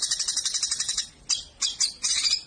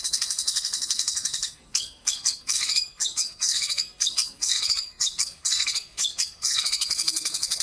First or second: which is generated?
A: second